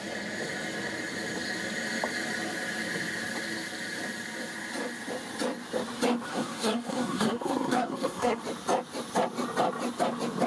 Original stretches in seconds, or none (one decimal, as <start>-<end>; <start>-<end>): 0.0-6.3; 8.4-10.5